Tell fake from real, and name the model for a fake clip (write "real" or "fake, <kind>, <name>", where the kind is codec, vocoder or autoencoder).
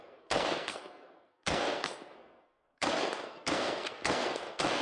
fake, codec, SNAC